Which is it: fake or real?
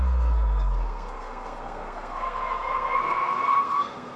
fake